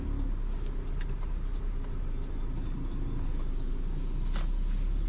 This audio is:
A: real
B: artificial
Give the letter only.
A